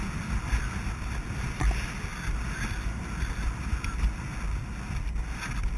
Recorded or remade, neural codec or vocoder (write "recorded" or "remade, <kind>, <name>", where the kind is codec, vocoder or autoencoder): recorded